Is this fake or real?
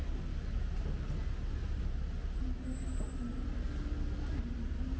real